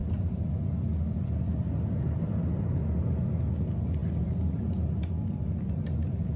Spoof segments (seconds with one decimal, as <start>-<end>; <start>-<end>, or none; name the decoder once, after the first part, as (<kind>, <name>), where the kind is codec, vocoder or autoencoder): none